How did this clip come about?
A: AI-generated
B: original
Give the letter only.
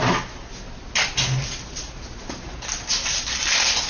B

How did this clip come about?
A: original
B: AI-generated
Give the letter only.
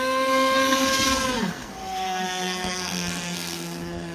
B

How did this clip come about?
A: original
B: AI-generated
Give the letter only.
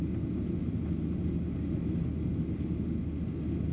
A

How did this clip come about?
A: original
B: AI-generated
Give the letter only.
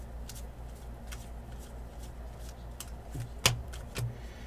A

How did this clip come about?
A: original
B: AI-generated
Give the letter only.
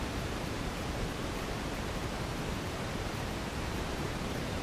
B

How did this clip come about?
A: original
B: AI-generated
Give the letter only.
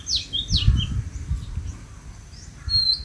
A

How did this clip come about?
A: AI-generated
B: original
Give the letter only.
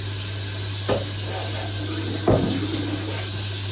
B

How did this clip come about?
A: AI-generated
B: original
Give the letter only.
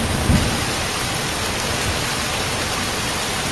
B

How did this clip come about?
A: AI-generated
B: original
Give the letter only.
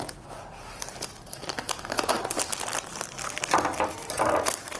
B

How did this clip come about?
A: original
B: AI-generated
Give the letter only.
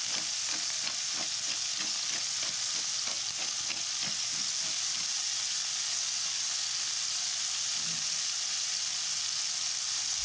A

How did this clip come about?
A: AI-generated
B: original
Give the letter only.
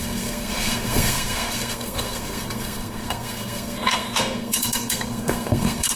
A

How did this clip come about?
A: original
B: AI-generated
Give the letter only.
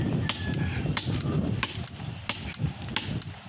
A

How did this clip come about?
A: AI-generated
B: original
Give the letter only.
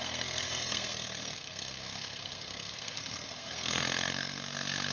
A